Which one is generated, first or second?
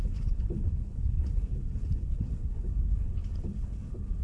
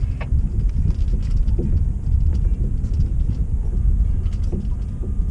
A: first